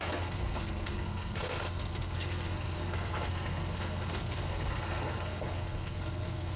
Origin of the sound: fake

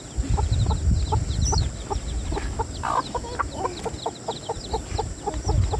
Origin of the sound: real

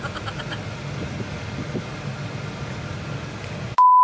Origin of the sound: real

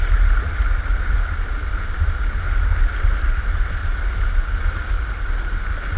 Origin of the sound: real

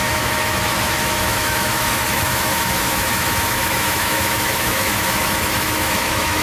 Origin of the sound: fake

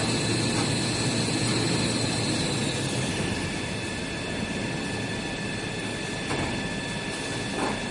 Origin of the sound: real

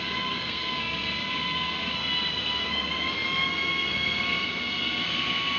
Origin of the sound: fake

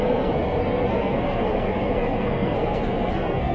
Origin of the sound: fake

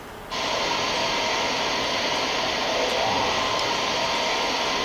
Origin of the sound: real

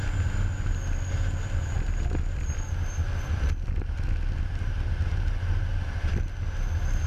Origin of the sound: real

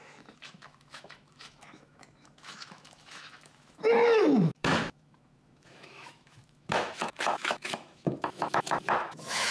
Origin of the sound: fake